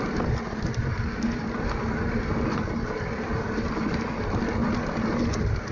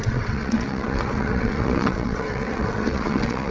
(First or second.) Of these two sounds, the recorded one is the first